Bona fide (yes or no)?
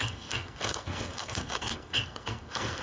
no